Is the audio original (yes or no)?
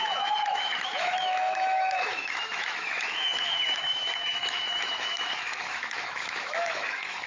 no